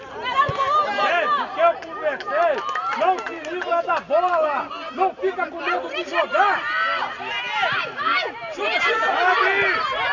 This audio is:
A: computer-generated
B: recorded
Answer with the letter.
B